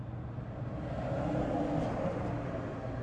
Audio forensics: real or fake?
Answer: real